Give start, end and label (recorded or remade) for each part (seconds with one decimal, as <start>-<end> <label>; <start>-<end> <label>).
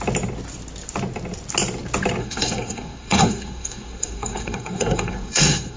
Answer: 0.0-2.2 recorded; 2.2-5.8 remade